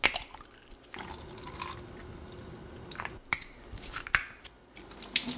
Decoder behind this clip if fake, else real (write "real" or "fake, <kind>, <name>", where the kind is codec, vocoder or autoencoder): real